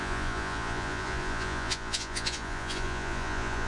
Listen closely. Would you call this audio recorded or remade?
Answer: remade